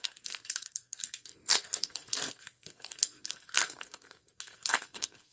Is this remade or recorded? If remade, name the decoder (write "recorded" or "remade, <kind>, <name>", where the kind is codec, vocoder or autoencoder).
remade, codec, SNAC